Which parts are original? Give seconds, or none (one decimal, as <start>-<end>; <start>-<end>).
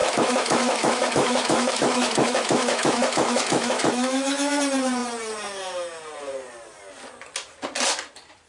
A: 4.6-8.5